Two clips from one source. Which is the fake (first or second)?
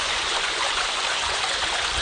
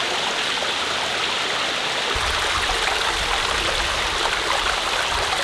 first